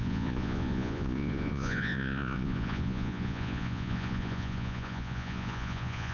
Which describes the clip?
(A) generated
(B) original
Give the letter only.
A